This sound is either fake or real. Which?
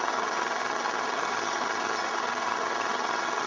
fake